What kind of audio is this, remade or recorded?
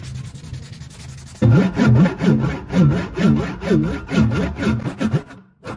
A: recorded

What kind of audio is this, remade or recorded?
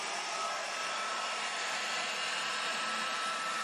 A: remade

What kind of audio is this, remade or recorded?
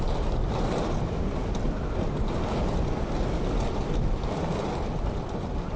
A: recorded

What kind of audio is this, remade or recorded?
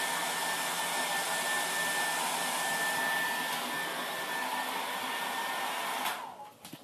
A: recorded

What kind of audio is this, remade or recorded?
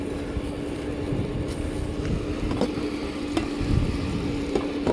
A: recorded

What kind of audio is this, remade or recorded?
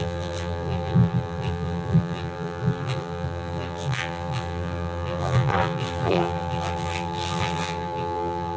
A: remade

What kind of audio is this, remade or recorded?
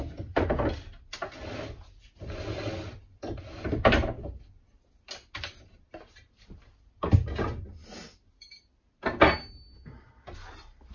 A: recorded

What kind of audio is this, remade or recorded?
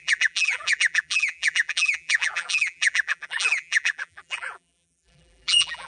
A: remade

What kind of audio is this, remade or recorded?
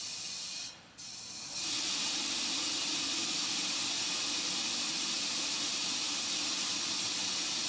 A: remade